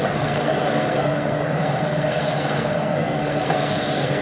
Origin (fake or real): fake